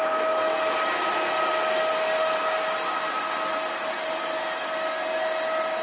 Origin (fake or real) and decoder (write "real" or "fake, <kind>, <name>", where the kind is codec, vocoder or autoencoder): real